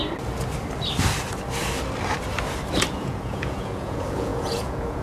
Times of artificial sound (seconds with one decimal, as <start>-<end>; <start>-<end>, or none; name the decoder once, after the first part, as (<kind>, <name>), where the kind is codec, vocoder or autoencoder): 2.9-5.0 (vocoder, Vocos)